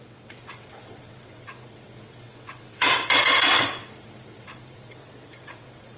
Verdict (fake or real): fake